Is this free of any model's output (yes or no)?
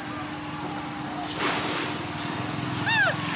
yes